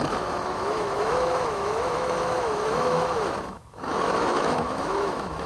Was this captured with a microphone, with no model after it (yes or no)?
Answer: no